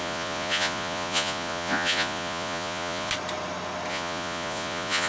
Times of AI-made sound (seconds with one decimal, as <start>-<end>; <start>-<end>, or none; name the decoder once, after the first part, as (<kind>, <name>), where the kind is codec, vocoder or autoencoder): 0.0-3.1 (vocoder, Vocos); 3.9-5.1